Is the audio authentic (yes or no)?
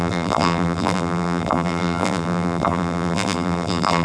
no